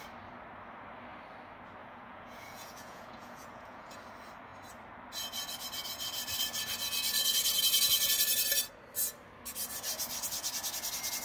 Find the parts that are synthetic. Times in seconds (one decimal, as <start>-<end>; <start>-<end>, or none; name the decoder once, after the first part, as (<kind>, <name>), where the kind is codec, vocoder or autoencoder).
1.8-4.0 (vocoder, Vocos)